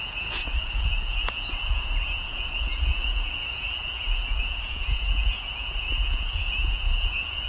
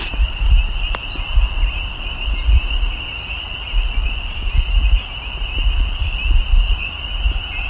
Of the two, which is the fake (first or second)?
first